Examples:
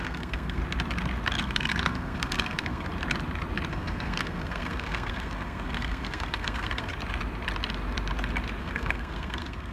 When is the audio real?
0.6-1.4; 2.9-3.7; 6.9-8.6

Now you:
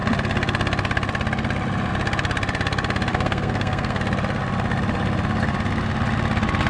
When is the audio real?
0.0-3.1; 4.0-6.7

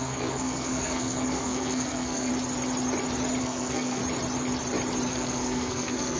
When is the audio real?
2.3-3.4; 4.0-5.1

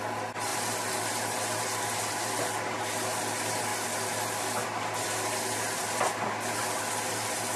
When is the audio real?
0.0-7.6